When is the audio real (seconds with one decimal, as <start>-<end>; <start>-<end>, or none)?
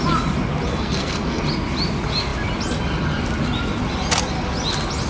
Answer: 0.0-0.7; 1.4-5.1